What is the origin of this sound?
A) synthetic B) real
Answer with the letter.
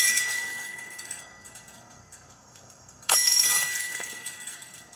A